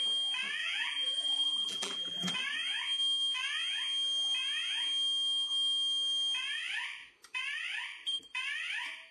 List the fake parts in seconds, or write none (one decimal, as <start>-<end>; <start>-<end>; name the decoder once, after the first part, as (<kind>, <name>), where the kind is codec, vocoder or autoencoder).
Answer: 0.6-2.3 (vocoder, BigVGAN v2)